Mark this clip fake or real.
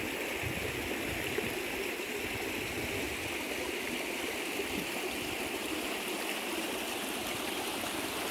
real